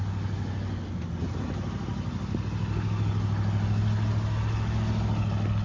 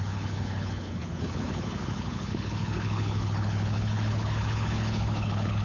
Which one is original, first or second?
first